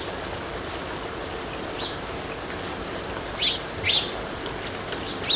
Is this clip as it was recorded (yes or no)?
yes